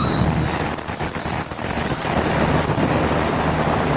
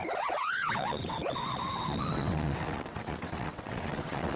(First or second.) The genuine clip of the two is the first